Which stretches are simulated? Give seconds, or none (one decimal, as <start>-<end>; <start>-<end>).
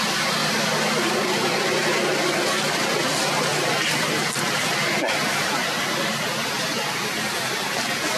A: 3.5-4.3